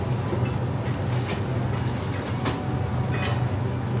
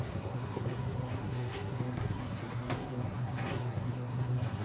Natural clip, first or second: first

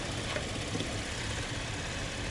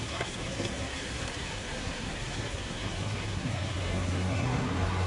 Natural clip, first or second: first